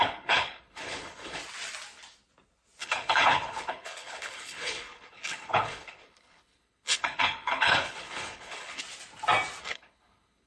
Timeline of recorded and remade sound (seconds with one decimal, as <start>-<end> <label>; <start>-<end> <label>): 0.0-1.4 remade; 1.4-2.8 recorded; 2.8-8.8 remade; 8.8-9.6 recorded; 9.6-10.5 remade